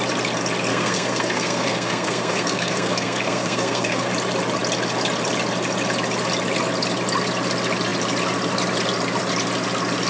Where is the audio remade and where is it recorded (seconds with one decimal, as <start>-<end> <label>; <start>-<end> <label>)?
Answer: 0.0-0.7 recorded; 0.7-4.1 remade; 4.1-10.1 recorded